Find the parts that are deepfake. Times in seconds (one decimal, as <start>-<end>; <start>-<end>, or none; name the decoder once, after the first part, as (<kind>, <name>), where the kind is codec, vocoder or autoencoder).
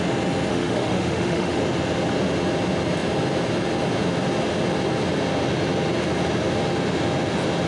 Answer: 0.5-1.6 (autoencoder, DAC-VAE)